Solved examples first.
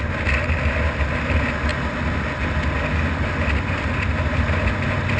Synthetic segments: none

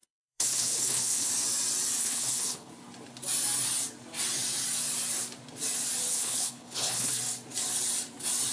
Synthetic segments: 0.0-1.3 (codec, HILCodec); 2.0-2.7; 6.1-7.2

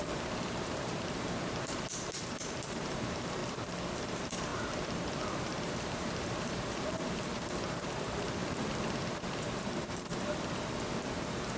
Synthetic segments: 0.0-3.4 (vocoder, BigVGAN v2); 4.0-8.4; 9.0-11.6